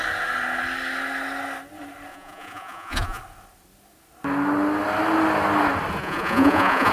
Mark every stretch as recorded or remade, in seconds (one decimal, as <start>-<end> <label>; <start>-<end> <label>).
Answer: 0.0-2.1 recorded; 2.1-3.2 remade; 3.2-6.0 recorded; 6.0-6.9 remade